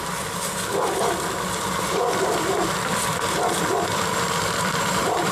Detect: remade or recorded remade